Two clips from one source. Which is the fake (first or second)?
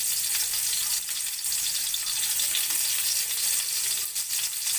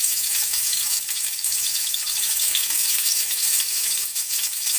second